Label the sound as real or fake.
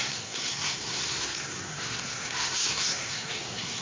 fake